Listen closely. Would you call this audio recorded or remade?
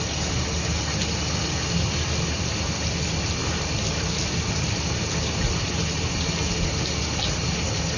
recorded